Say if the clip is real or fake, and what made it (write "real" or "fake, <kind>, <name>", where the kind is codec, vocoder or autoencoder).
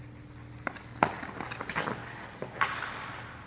real